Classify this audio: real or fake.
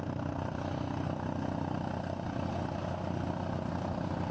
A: real